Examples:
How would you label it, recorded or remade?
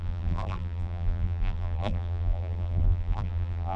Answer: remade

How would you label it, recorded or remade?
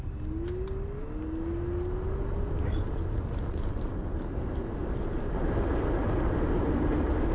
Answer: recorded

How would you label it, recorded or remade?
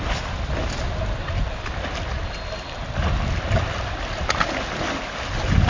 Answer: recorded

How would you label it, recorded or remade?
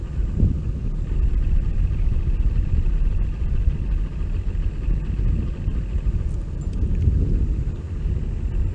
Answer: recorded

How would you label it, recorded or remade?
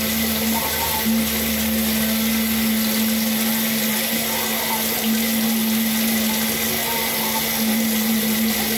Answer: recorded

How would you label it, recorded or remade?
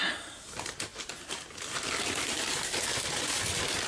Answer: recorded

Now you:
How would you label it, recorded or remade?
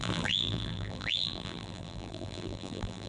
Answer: remade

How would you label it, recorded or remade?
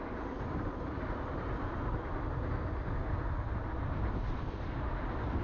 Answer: recorded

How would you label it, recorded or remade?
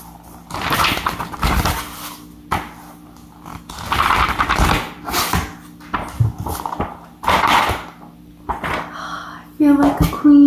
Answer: recorded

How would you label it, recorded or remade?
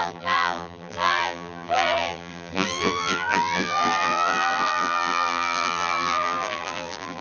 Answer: remade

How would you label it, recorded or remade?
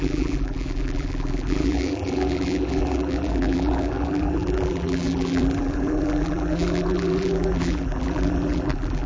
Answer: remade